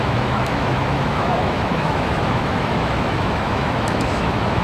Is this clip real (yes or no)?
no